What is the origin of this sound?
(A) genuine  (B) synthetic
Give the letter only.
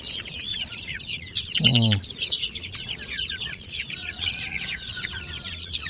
B